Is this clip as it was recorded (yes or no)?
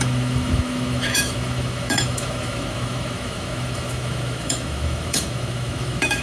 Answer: no